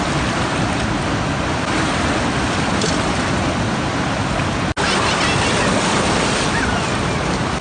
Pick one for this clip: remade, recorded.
recorded